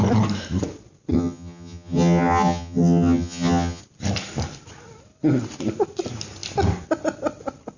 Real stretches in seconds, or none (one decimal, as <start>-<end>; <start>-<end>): 0.0-1.1; 3.8-7.8

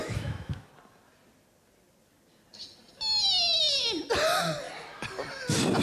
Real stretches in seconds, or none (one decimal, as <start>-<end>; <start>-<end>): 0.7-5.8

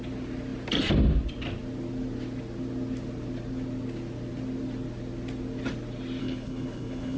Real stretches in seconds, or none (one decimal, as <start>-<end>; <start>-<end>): 0.0-6.2

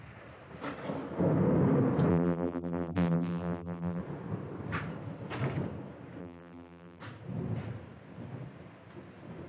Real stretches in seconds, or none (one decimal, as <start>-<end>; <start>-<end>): 0.0-2.1; 4.0-6.2; 7.0-9.5

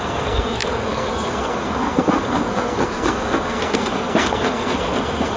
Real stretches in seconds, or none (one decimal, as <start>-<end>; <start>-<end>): none

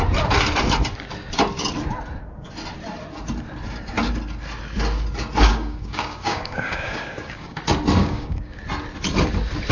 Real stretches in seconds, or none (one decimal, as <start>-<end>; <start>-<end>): 0.0-5.5; 7.6-8.0; 8.6-9.7